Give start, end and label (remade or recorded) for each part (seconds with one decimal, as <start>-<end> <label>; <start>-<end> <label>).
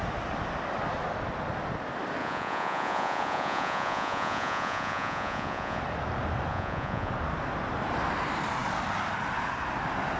0.0-2.2 recorded; 2.2-5.8 remade; 5.8-6.5 recorded; 6.5-7.1 remade; 7.1-10.2 recorded